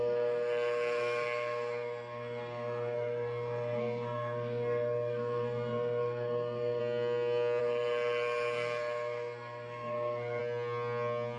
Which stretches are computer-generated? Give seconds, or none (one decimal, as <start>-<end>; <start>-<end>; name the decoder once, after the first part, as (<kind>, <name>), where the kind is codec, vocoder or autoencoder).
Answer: 0.0-6.8 (codec, SNAC); 7.6-10.4